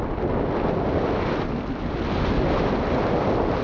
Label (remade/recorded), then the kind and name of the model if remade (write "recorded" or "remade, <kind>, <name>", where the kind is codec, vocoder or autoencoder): recorded